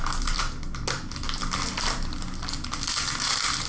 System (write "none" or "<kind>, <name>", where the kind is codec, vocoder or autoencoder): none